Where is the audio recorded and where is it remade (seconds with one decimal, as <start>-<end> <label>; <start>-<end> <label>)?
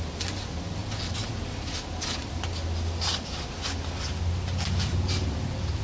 0.0-0.8 remade; 0.8-4.3 recorded; 4.3-5.8 remade